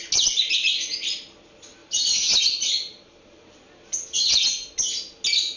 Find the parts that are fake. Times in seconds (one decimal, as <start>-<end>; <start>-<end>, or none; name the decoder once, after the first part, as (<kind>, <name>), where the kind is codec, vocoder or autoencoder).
1.8-3.5 (vocoder, BigVGAN v2)